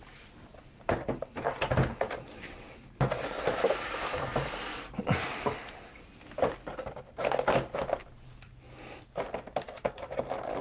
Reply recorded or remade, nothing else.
recorded